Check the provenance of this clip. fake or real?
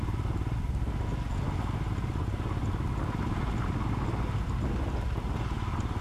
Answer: real